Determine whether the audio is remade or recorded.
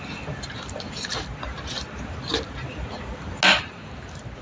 recorded